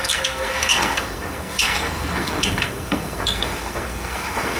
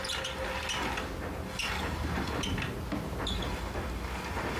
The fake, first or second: first